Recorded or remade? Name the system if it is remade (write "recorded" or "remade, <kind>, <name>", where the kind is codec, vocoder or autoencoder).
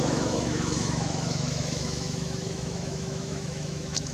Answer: remade, autoencoder, DAC-VAE